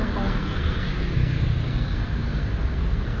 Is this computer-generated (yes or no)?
yes